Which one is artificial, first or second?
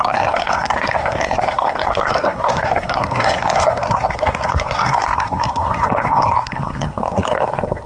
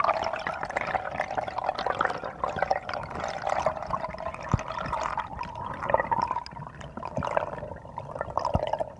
first